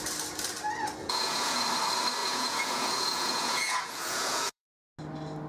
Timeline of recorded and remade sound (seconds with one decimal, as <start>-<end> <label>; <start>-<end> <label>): 0.0-1.0 recorded; 1.0-1.6 remade; 1.6-2.2 recorded; 2.2-4.7 remade; 4.7-5.5 recorded